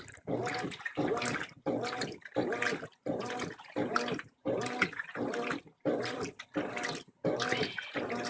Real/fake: real